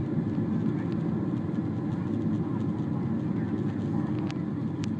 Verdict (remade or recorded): recorded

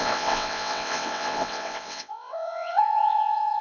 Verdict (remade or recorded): remade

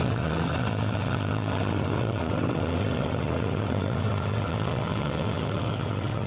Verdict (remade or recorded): remade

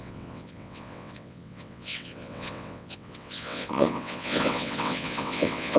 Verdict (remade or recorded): remade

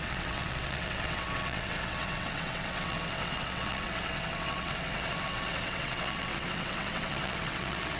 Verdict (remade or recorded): remade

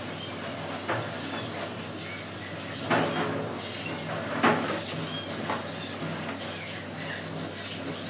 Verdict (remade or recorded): recorded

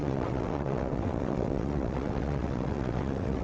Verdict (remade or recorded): remade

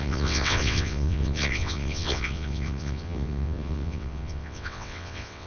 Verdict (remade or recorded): remade